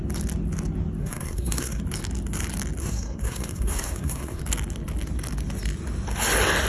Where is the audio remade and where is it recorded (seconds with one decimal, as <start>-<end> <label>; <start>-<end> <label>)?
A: 0.0-1.0 recorded; 1.0-1.8 remade; 1.8-2.8 recorded; 2.8-4.4 remade; 4.4-6.7 recorded